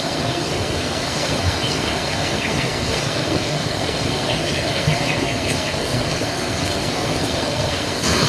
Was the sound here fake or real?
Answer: fake